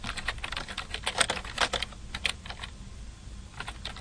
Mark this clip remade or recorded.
recorded